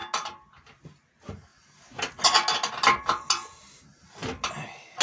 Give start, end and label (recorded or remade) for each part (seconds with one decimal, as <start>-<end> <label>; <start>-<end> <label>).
0.0-5.0 recorded